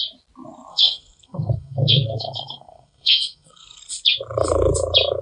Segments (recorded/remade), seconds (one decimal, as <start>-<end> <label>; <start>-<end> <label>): 0.0-0.7 recorded; 0.7-3.8 remade; 3.8-5.2 recorded